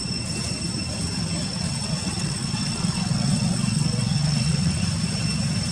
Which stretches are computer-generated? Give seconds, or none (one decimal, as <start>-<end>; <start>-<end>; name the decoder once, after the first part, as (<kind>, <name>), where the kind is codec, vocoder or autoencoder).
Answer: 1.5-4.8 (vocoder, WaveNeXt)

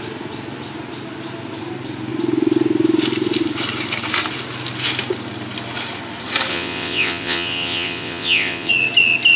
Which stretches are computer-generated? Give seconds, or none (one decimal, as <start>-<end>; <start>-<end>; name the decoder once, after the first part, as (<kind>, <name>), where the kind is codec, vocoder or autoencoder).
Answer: 6.5-8.7 (vocoder, WaveNeXt)

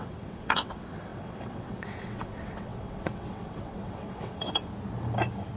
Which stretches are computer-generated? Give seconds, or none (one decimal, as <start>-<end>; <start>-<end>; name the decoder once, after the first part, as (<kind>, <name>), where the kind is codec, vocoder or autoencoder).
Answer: 0.0-4.7 (vocoder, WaveNeXt)

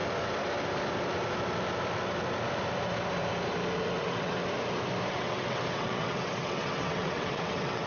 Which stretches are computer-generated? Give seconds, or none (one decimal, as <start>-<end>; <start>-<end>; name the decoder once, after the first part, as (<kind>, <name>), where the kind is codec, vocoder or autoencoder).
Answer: 4.0-4.4 (vocoder, WaveNeXt); 5.1-7.9